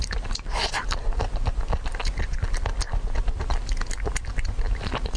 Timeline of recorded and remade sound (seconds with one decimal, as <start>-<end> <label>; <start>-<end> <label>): 0.0-5.2 recorded